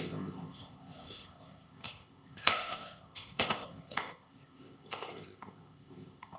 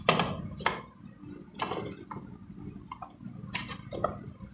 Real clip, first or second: second